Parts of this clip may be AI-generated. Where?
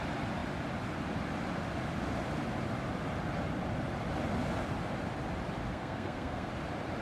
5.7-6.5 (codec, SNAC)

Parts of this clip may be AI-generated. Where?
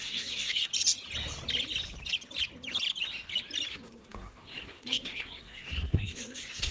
0.0-0.7 (codec, SNAC); 3.7-6.7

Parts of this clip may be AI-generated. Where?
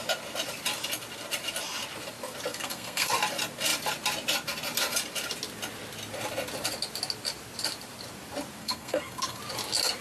2.5-3.1 (codec, SNAC); 8.6-9.4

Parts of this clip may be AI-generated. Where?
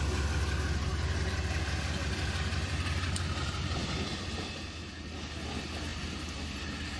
none